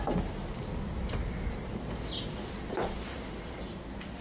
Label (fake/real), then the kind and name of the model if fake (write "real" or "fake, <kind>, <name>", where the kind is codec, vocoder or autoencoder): real